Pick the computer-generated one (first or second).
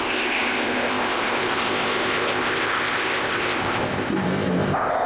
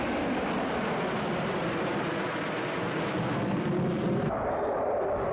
first